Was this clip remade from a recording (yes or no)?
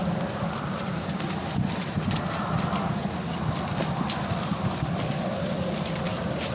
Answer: no